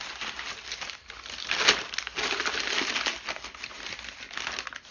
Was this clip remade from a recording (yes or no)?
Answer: no